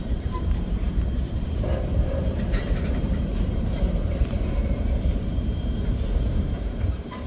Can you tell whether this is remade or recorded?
remade